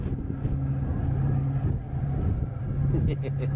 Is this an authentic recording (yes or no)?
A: yes